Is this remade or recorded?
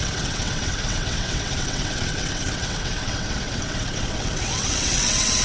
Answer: remade